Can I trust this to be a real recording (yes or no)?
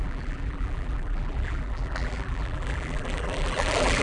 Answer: no